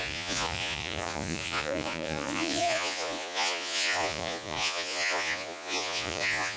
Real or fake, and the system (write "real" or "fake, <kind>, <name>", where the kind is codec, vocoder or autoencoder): fake, vocoder, Vocos